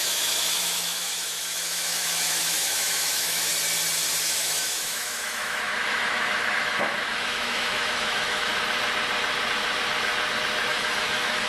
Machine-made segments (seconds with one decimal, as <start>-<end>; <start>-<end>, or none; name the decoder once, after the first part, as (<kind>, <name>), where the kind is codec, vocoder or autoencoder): 0.0-3.5 (autoencoder, DAC-VAE); 4.2-8.5; 10.7-11.5